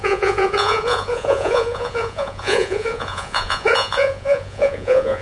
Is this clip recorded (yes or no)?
no